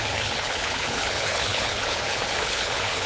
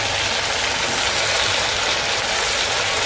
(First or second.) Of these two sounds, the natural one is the second